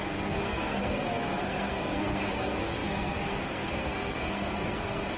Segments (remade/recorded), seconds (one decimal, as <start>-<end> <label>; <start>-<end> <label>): 0.0-5.2 remade